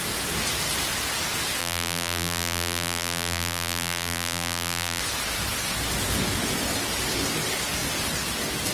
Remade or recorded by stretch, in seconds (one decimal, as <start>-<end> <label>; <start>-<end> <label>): 0.0-1.6 recorded; 1.6-5.0 remade; 5.0-8.7 recorded